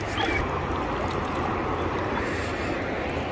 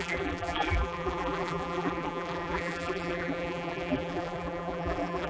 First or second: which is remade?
second